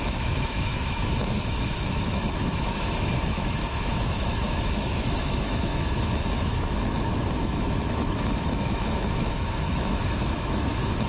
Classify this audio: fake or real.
fake